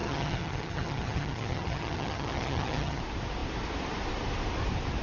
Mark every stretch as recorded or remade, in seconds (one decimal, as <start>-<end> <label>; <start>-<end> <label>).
0.0-3.0 remade; 3.0-5.0 recorded